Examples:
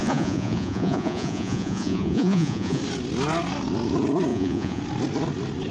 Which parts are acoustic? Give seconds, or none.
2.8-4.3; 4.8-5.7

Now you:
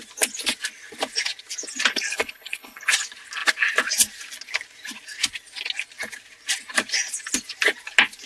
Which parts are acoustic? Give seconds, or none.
0.0-1.9; 2.9-8.3

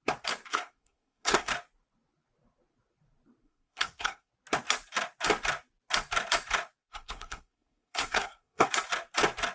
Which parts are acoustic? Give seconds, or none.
0.0-0.5; 1.5-3.4; 4.3-6.8; 8.7-9.5

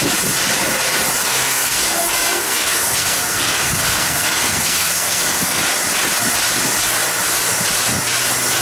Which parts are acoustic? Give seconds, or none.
0.0-1.2; 5.6-8.6

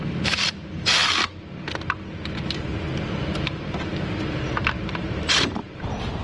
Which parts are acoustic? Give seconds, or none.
1.0-3.4

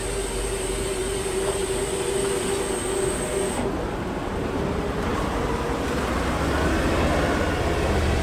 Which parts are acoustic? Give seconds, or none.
0.0-8.2

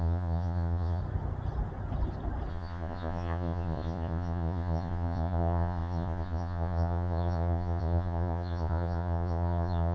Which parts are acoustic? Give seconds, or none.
1.0-2.5